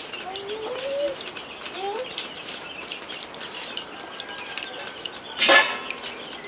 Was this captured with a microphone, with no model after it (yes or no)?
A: yes